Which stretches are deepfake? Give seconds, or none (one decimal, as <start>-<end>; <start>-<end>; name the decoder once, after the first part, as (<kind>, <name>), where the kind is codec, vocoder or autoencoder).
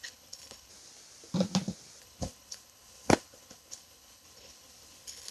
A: 0.0-0.7 (codec, HILCodec); 2.0-5.3